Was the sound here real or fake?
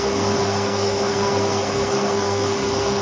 fake